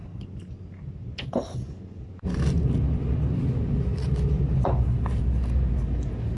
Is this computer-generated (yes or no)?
no